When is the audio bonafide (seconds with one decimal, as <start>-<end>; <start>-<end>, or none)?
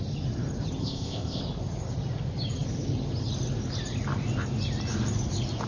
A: 0.0-0.8; 1.4-5.7